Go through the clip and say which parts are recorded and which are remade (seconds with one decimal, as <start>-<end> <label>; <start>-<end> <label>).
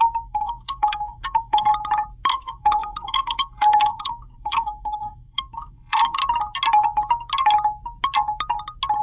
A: 0.0-1.7 remade; 1.7-2.3 recorded; 2.3-6.2 remade; 6.2-9.0 recorded